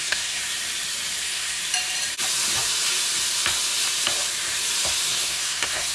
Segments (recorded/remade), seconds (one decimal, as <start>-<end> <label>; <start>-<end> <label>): 0.0-0.4 remade; 0.4-1.2 recorded; 1.2-1.6 remade; 1.6-5.1 recorded; 5.1-5.9 remade